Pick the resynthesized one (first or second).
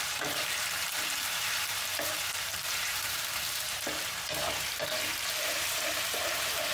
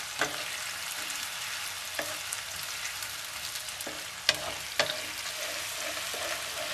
first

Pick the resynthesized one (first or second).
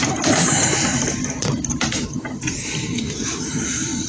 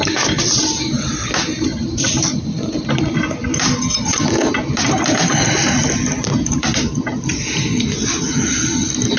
first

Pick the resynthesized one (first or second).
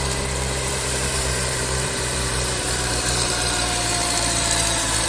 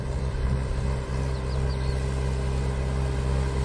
first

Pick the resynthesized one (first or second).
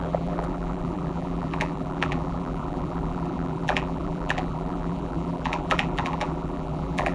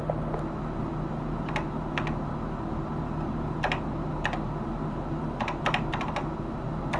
first